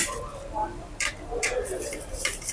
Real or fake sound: fake